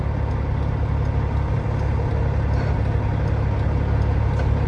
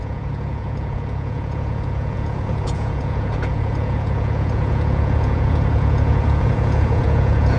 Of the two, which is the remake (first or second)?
second